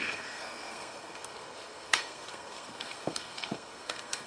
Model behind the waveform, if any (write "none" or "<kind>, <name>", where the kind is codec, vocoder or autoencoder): codec, SNAC